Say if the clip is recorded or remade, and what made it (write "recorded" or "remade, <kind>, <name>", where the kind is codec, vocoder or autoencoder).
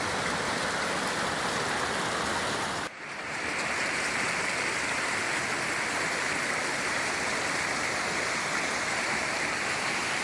recorded